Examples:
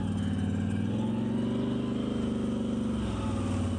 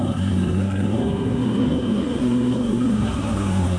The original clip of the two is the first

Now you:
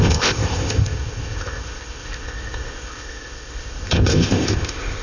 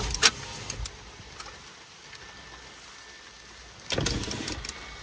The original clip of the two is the second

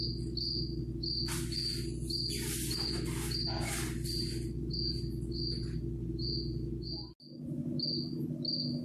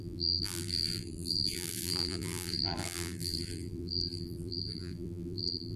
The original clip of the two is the first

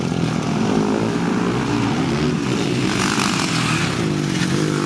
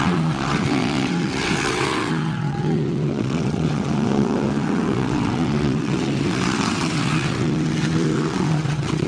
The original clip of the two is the first